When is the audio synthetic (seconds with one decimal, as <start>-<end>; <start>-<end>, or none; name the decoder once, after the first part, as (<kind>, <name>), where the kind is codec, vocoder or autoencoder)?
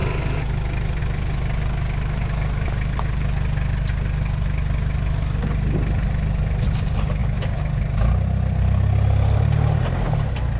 none